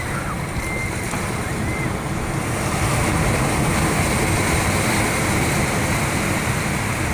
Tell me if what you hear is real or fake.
real